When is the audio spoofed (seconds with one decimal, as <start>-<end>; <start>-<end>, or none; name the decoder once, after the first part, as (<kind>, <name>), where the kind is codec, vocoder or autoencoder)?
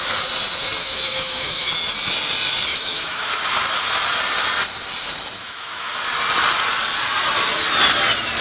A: 0.8-1.7 (autoencoder, DAC-VAE); 2.7-3.3; 5.4-5.9